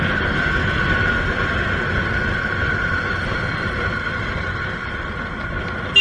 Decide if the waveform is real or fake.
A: real